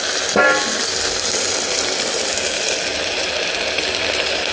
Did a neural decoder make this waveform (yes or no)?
no